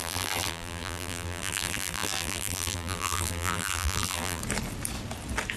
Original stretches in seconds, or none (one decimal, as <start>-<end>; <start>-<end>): 4.4-5.6